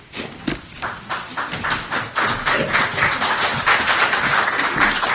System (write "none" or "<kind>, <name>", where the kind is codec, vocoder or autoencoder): none